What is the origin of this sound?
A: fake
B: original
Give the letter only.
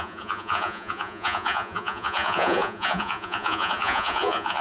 A